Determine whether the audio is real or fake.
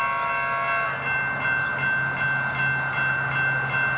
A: real